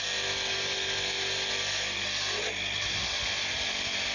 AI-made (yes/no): no